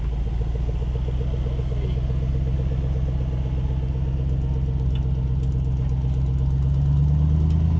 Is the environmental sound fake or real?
real